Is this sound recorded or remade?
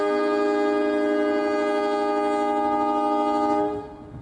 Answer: recorded